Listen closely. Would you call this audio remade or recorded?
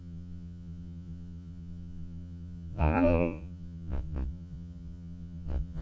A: remade